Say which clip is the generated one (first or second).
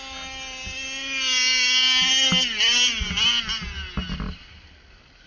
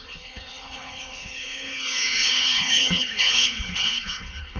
second